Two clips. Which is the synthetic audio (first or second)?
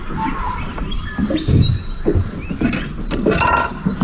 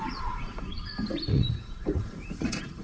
second